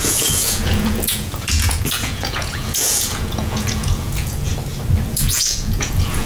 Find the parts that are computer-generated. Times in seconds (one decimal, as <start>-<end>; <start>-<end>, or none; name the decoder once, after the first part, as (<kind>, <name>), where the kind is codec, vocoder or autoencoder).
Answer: 0.0-4.5 (vocoder, Vocos); 5.1-6.3